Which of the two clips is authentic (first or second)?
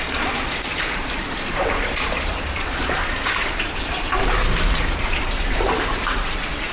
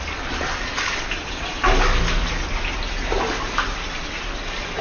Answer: second